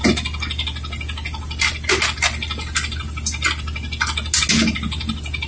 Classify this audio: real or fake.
real